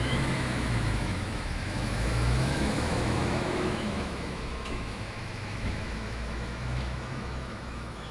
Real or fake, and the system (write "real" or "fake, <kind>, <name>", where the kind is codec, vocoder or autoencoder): fake, autoencoder, DAC-VAE